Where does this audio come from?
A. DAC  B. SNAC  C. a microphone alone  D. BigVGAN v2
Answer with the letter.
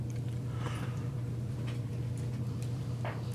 D